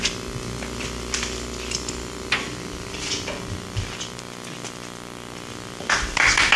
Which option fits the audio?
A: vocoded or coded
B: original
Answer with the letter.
B